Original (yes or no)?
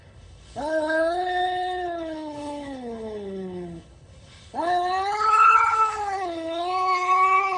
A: no